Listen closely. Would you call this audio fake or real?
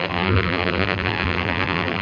fake